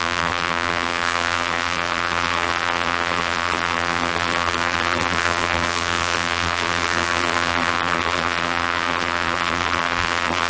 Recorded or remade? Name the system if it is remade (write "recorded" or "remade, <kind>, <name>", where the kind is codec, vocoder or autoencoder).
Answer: remade, vocoder, BigVGAN v2